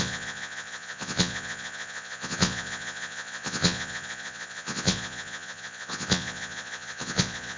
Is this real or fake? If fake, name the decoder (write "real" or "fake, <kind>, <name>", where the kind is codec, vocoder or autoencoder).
fake, vocoder, Vocos